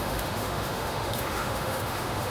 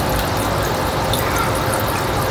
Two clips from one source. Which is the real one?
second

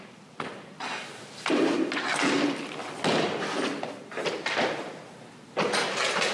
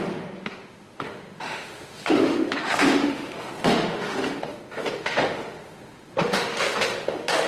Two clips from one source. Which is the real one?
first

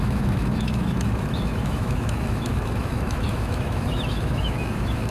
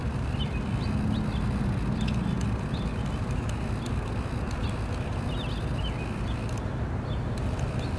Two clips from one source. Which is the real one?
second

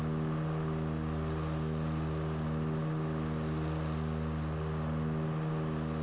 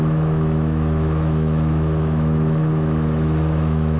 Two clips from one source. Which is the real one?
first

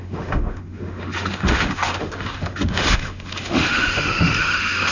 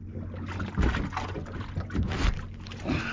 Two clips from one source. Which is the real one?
second